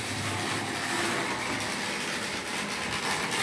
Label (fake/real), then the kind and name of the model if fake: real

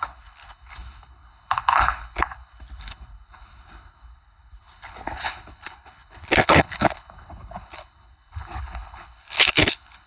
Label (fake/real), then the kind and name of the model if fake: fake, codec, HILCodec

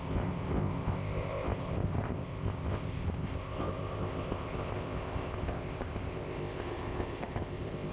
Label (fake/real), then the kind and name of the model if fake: fake, codec, ZipCodec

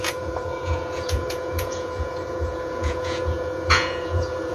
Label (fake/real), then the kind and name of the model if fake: fake, vocoder, Vocos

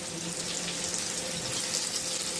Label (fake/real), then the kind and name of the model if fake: real